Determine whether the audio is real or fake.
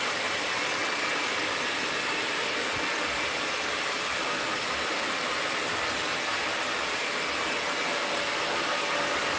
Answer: real